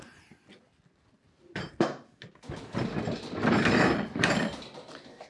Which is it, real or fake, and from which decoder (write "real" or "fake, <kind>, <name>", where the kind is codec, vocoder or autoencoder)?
real